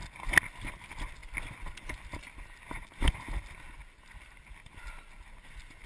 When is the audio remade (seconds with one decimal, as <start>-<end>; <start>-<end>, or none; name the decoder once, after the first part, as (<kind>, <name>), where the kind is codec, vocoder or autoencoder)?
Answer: none